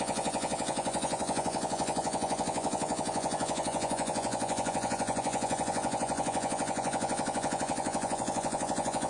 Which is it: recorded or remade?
remade